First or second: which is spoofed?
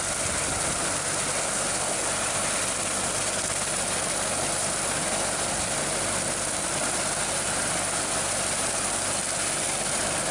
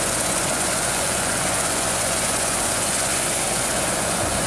second